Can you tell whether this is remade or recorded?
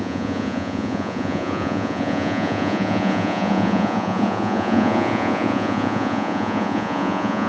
remade